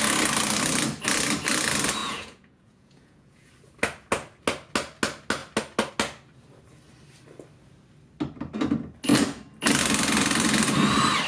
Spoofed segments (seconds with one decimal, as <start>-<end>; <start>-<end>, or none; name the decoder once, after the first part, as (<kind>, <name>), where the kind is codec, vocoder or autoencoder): 2.0-3.5 (vocoder, Vocos)